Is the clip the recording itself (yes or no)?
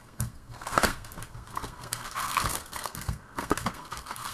no